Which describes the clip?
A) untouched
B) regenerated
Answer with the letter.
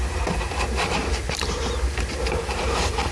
B